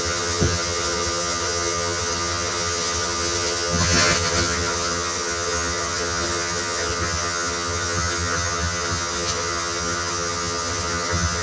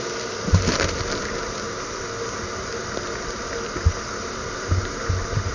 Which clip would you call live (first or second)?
second